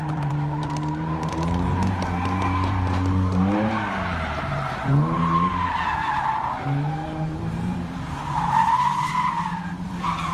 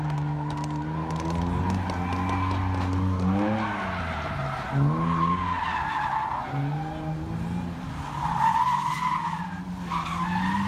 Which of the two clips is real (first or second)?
second